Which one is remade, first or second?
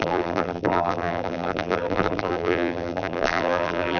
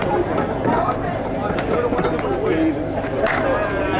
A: first